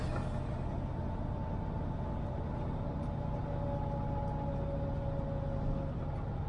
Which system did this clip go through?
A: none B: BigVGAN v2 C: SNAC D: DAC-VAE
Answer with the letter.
A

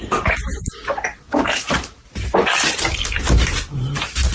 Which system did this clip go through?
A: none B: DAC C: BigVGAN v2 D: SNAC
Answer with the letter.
A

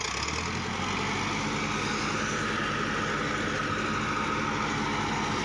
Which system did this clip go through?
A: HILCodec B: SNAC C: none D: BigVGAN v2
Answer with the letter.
C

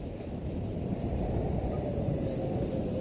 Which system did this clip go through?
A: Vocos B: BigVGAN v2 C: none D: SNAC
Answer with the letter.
C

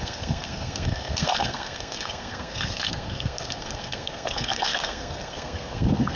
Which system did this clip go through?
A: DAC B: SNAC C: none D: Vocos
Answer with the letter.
B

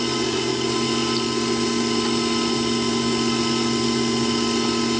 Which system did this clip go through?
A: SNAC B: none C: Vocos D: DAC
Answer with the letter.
B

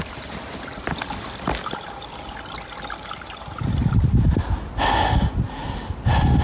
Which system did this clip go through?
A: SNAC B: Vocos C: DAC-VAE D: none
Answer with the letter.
D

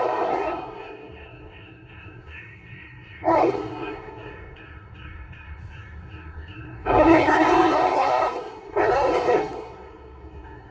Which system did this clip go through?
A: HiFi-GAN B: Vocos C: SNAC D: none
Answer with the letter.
C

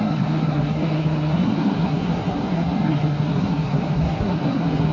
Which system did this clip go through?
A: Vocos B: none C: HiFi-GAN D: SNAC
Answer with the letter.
D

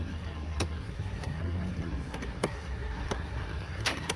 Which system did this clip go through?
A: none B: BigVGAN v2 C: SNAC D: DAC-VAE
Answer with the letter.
C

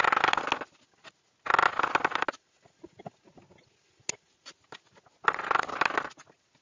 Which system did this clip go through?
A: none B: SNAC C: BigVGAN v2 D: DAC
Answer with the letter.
A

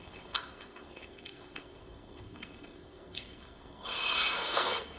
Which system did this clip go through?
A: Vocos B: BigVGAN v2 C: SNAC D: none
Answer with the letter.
C